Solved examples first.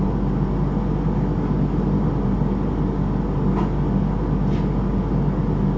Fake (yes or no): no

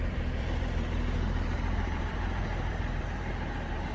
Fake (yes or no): yes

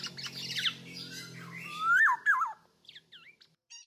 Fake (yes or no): no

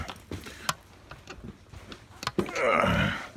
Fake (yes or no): no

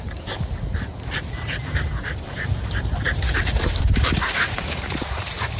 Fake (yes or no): yes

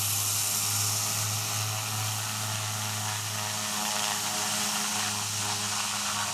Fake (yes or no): no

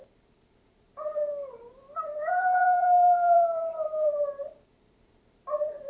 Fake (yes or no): yes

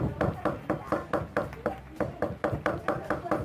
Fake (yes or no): no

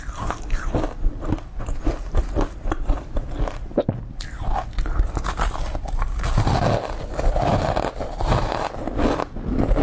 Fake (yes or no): yes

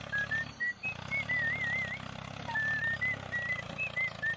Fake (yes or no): no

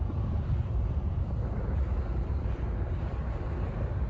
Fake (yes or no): yes